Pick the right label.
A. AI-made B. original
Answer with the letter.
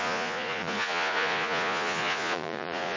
A